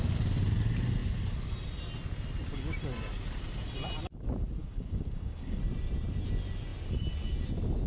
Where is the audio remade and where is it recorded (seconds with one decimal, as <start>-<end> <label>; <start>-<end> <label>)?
0.0-4.6 recorded; 4.6-5.6 remade; 5.6-7.9 recorded